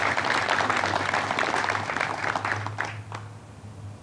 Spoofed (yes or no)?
no